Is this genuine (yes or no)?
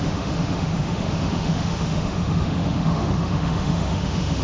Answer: no